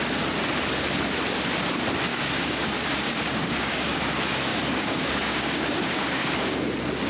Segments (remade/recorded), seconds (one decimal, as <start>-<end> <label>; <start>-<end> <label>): 0.0-2.1 recorded; 2.1-4.1 remade; 4.1-4.5 recorded; 4.5-6.3 remade; 6.3-7.1 recorded